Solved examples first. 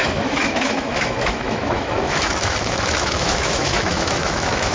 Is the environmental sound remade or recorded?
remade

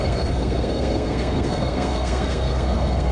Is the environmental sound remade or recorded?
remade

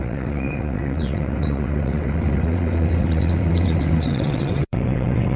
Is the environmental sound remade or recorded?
remade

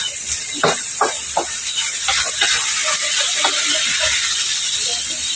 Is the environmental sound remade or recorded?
recorded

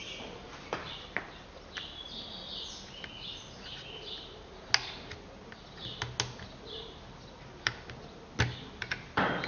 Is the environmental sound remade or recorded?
recorded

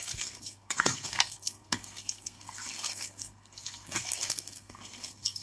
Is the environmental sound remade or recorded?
remade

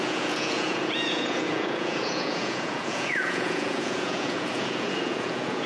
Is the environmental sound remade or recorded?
remade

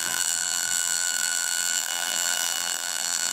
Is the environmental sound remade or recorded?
remade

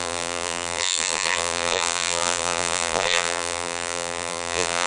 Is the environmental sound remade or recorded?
remade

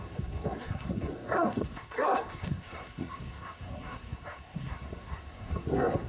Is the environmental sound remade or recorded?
remade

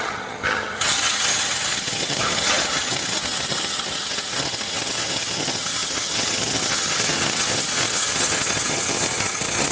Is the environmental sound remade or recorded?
remade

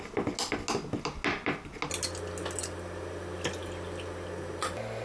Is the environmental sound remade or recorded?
recorded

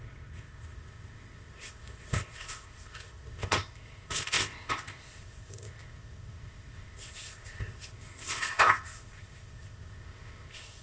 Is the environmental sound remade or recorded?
remade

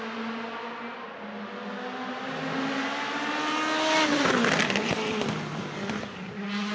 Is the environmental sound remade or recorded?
recorded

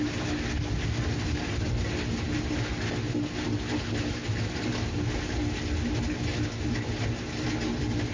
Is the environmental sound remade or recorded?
recorded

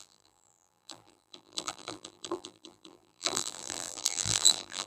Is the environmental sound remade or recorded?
remade